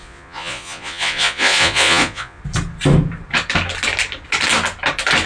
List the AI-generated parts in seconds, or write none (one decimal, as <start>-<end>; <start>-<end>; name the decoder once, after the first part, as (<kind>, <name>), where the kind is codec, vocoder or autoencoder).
0.0-2.4 (vocoder, Vocos)